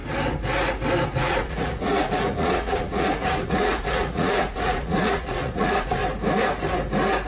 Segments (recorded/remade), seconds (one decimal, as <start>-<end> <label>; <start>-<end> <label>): 0.0-1.2 recorded; 1.2-6.0 remade; 6.0-7.3 recorded